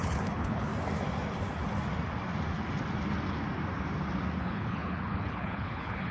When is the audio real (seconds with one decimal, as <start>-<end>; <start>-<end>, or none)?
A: 0.7-4.4